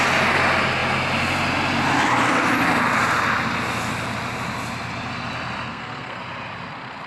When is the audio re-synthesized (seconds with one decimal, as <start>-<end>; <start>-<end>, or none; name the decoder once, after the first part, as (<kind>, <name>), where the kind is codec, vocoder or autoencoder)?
5.7-6.2 (codec, SNAC)